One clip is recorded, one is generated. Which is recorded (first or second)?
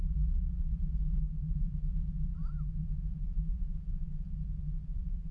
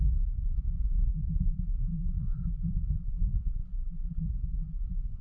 first